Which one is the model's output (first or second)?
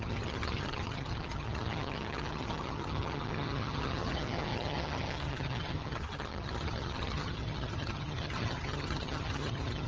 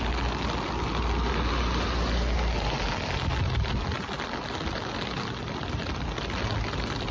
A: first